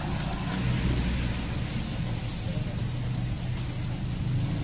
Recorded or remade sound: recorded